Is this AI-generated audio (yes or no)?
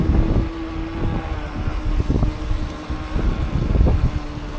no